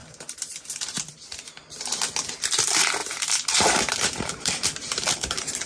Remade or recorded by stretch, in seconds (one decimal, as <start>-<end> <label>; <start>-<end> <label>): 0.0-3.0 recorded; 3.0-5.7 remade